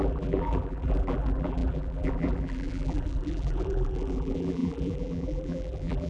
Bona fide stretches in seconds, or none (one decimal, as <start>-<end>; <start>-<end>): none